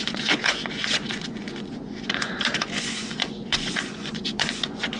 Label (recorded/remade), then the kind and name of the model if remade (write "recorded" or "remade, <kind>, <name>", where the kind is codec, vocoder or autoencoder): remade, vocoder, Vocos